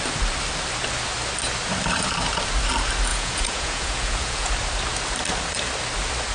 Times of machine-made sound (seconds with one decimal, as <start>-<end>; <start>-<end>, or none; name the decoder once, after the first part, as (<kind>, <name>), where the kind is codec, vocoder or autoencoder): 3.1-4.5 (vocoder, Vocos)